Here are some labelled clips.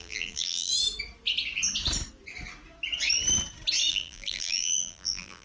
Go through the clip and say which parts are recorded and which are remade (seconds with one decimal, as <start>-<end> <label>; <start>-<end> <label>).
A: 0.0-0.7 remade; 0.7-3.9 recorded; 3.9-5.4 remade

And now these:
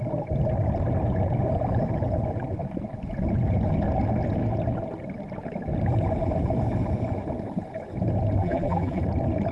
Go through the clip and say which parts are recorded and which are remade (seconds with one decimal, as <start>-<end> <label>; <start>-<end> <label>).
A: 0.0-8.4 recorded; 8.4-9.0 remade; 9.0-9.5 recorded

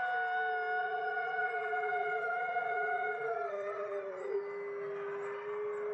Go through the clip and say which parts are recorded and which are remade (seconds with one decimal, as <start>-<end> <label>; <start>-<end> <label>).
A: 0.0-0.8 recorded; 0.8-4.3 remade; 4.3-5.9 recorded

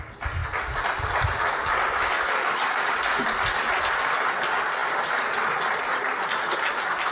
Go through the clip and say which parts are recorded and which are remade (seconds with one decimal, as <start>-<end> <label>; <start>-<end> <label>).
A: 0.0-0.4 remade; 0.4-2.8 recorded; 2.8-7.1 remade

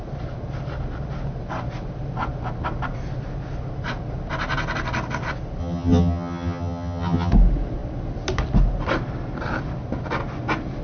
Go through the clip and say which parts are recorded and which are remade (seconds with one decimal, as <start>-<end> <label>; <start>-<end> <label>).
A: 0.0-5.6 recorded; 5.6-7.3 remade; 7.3-10.8 recorded

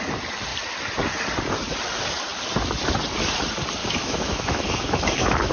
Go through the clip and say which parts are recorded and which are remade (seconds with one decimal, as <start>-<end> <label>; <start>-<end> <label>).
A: 0.0-3.8 recorded; 3.8-5.5 remade